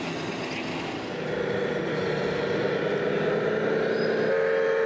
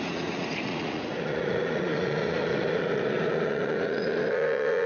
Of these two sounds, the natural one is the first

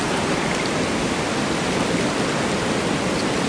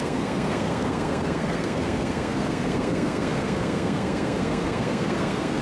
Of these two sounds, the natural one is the first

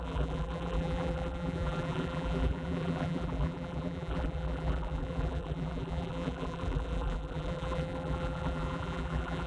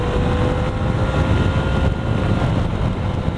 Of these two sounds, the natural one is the second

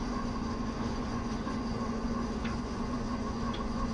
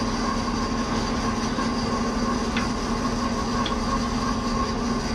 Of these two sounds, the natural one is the second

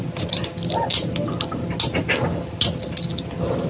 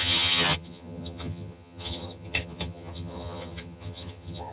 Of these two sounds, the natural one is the first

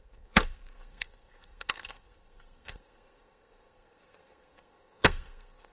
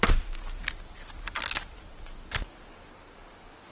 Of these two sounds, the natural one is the second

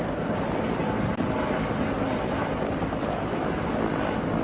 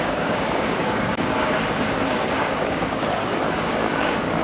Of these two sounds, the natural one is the first